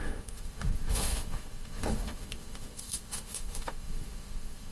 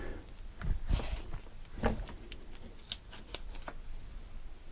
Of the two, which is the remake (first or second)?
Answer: first